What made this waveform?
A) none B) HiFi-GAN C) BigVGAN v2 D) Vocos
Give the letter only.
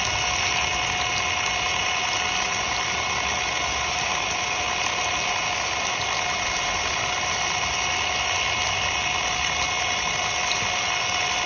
A